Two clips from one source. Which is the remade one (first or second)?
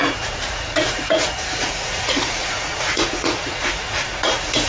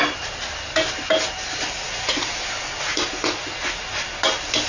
first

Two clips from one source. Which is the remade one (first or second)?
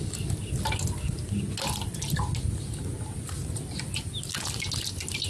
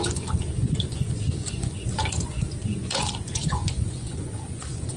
second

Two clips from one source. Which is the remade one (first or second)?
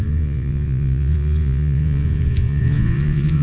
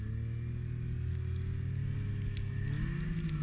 first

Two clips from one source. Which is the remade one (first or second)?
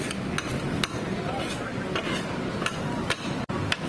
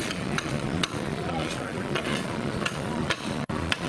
second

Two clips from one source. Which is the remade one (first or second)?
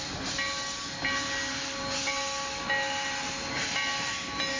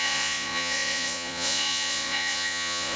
second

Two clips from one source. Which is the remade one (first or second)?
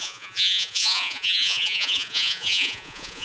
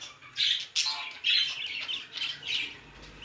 first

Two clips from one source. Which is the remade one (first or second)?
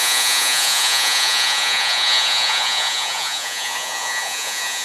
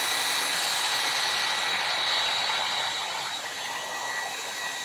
first